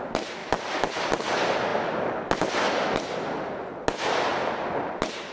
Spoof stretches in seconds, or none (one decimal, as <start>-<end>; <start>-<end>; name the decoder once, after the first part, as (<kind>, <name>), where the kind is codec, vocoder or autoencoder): none